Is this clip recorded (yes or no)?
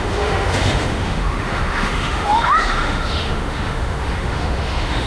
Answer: no